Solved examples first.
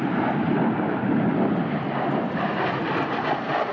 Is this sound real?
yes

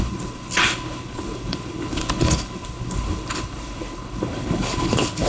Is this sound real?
no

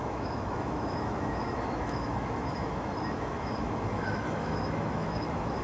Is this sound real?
no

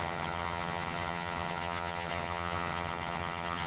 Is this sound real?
no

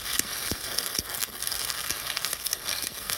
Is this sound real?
no